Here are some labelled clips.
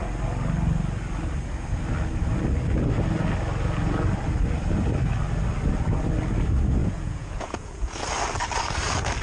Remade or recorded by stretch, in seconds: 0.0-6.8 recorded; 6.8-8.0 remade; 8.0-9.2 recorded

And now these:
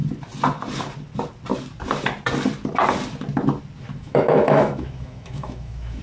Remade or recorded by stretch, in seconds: 0.0-4.0 recorded; 4.0-6.0 remade

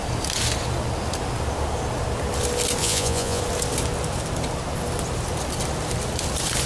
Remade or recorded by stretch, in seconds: 0.0-2.8 recorded; 2.8-3.4 remade; 3.4-6.7 recorded

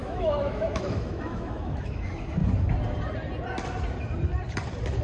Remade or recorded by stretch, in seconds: 0.0-2.4 remade; 2.4-5.0 recorded